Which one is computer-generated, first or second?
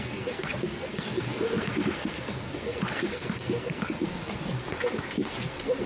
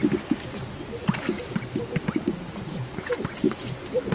first